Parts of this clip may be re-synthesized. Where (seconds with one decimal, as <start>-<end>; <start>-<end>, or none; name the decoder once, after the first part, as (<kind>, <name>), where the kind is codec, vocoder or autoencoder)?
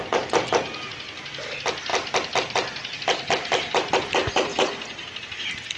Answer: none